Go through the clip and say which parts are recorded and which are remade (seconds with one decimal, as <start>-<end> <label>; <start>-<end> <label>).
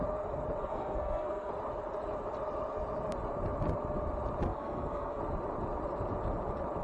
0.0-0.6 recorded; 0.6-1.5 remade; 1.5-4.5 recorded; 4.5-5.2 remade; 5.2-6.8 recorded